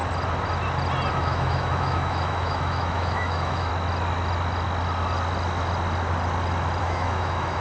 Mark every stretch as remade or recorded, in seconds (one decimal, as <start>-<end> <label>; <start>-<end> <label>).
0.0-1.1 recorded; 1.1-3.7 remade; 3.7-6.8 recorded; 6.8-7.6 remade